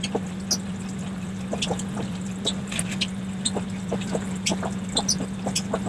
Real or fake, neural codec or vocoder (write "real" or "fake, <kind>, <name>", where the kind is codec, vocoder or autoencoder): real